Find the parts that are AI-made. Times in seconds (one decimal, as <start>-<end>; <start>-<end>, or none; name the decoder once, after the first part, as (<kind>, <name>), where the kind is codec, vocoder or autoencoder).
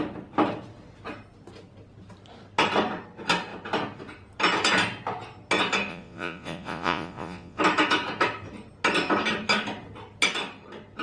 5.9-7.6 (vocoder, Vocos)